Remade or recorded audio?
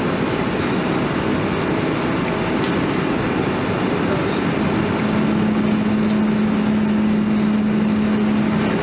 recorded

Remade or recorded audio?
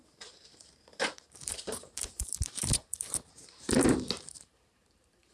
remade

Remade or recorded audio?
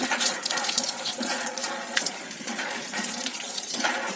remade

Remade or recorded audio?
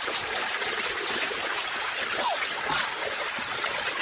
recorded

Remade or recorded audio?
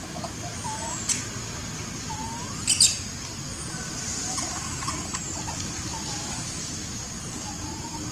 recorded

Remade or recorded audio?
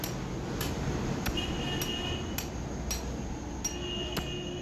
recorded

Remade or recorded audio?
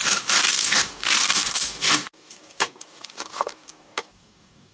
remade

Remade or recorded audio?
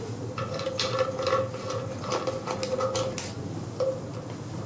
recorded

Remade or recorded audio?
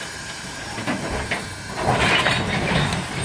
remade